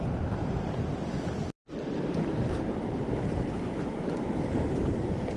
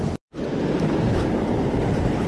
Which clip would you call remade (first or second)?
first